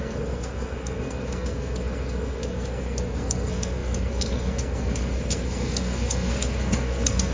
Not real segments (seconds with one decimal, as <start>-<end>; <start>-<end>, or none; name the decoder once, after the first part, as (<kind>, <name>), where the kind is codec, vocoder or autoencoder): 0.0-7.3 (codec, SNAC)